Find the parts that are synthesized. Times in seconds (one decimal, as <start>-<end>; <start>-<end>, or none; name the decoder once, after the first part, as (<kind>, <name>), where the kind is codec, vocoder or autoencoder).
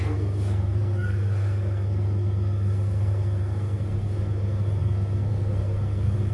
0.0-6.3 (codec, SNAC)